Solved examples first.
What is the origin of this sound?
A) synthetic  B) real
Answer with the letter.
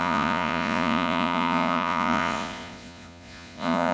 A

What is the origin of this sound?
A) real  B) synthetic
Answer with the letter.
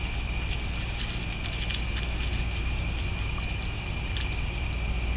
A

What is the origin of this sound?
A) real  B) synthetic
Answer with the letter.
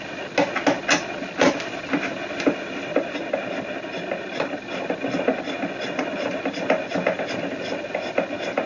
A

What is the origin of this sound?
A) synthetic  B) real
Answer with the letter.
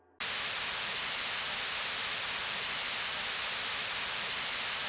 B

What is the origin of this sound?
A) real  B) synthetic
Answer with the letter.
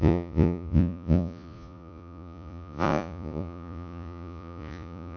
B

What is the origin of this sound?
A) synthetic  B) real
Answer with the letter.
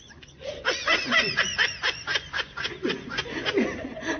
A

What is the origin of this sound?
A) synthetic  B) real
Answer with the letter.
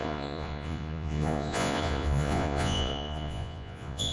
A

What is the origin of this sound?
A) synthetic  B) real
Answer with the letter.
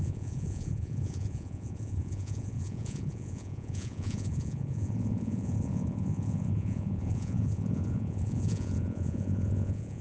A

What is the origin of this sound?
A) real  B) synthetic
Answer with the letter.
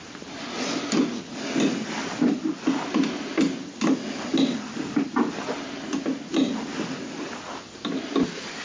A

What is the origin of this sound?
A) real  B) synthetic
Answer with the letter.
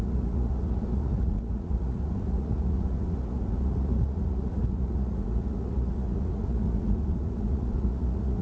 B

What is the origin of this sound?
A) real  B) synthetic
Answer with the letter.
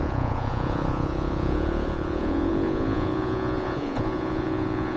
B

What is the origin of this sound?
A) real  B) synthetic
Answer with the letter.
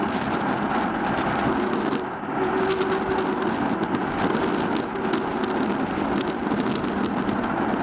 A